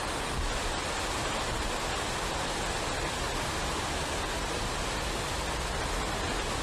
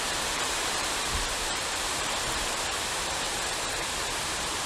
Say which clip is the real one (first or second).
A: first